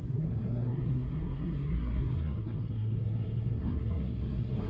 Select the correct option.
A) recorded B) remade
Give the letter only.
B